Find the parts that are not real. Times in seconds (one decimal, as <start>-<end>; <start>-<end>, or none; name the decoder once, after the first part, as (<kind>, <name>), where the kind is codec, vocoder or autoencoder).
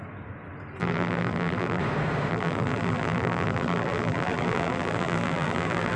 0.8-1.8 (vocoder, BigVGAN v2); 2.3-6.0